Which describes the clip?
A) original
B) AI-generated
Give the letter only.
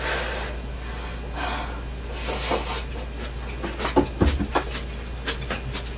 A